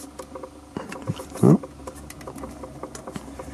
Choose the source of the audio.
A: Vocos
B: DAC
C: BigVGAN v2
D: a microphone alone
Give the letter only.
D